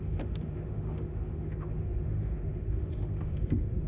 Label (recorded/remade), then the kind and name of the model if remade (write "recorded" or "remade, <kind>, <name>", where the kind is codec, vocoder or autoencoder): remade, autoencoder, DAC-VAE